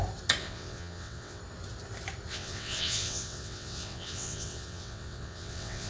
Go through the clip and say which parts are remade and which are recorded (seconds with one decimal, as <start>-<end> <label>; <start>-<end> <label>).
0.0-0.4 recorded; 0.4-1.4 remade; 1.4-2.3 recorded; 2.3-5.9 remade